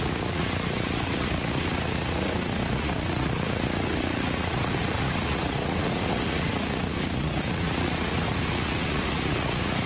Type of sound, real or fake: fake